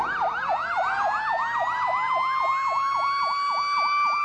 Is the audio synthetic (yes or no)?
no